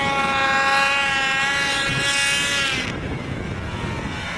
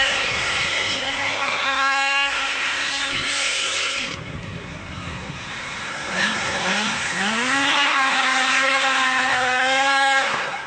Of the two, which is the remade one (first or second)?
second